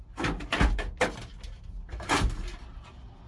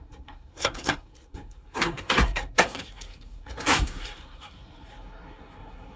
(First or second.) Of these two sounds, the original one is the first